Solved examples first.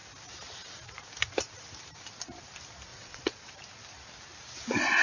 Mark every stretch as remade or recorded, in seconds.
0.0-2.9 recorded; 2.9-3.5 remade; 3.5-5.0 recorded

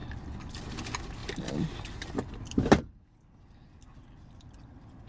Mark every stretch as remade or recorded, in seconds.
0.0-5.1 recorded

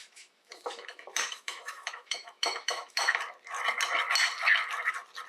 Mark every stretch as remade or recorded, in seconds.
0.0-3.2 remade; 3.2-5.3 recorded

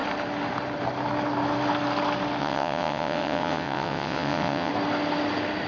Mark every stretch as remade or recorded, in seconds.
0.0-2.4 recorded; 2.4-4.7 remade; 4.7-5.7 recorded

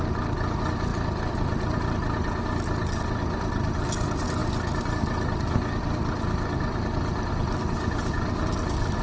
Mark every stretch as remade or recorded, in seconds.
0.0-9.0 recorded

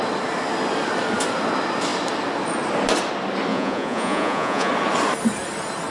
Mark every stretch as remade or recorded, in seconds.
0.0-3.5 recorded; 3.5-4.7 remade; 4.7-5.9 recorded

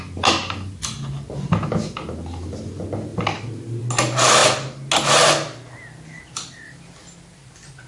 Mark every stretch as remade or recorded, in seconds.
0.0-3.1 recorded; 3.1-3.8 remade; 3.8-7.9 recorded

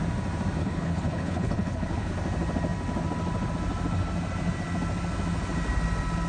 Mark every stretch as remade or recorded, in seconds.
0.0-0.6 recorded; 0.6-2.1 remade; 2.1-6.3 recorded